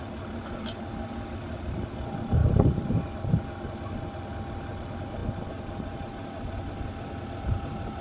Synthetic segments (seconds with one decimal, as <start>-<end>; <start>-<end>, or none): 2.4-3.0

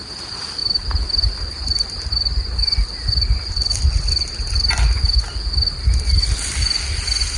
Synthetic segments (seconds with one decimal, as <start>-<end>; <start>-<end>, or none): 0.6-2.3

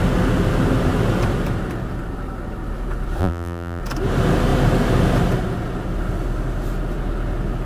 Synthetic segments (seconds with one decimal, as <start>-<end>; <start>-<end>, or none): 3.2-3.8

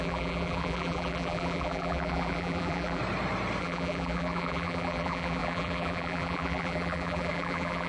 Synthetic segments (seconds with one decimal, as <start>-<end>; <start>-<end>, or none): 0.0-3.0; 3.6-7.9